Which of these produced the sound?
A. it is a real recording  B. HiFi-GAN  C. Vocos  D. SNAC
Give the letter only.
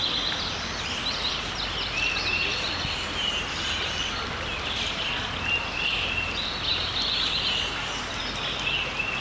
A